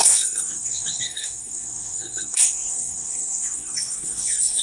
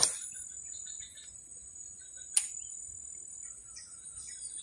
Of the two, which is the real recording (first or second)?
second